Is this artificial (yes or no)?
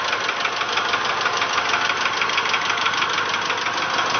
no